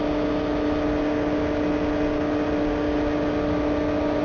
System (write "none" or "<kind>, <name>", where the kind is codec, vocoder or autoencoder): none